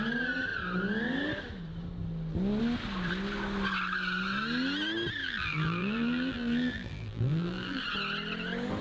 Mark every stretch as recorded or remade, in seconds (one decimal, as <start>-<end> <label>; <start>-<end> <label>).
0.0-5.2 recorded; 5.2-7.8 remade; 7.8-8.8 recorded